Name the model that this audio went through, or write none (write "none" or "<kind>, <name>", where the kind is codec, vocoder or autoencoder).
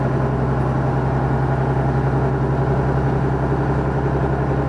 none